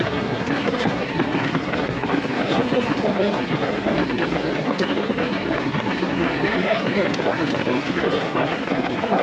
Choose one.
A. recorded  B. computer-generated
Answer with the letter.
B